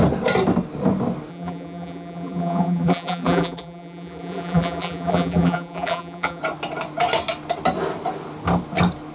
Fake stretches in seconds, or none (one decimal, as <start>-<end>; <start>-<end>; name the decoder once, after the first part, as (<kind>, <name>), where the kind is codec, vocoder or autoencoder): 1.3-6.4 (vocoder, BigVGAN v2)